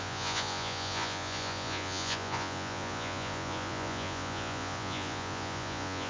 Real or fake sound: fake